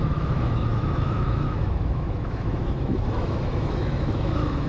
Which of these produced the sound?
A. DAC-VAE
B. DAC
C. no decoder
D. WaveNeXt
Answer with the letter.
A